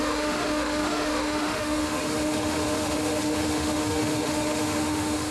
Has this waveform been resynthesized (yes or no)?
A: yes